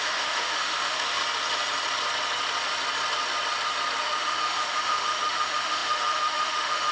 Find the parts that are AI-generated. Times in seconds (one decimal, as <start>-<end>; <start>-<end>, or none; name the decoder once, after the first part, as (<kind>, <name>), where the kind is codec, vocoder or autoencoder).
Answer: 0.0-1.2 (autoencoder, DAC-VAE); 4.0-6.9